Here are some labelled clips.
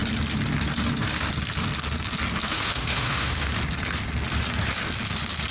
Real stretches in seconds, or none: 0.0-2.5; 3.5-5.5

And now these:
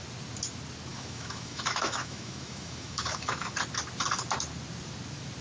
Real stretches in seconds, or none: 0.0-0.9; 3.5-5.4

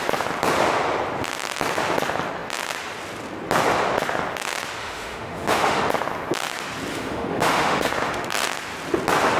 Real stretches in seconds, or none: 0.0-4.8; 5.8-6.9; 8.5-9.4

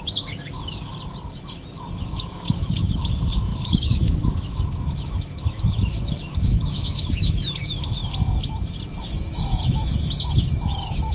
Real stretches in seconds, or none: 0.9-2.0; 8.0-9.0

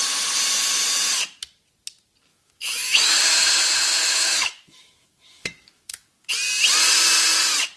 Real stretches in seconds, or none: 0.0-2.3; 3.2-3.9; 6.3-7.8

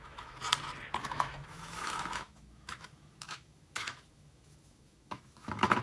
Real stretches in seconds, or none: 0.4-1.0